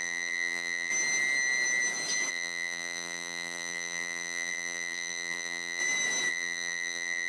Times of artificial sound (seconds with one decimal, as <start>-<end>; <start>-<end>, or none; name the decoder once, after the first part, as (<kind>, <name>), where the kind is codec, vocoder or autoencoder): 0.0-0.9 (vocoder, BigVGAN v2); 2.3-5.8; 6.3-7.3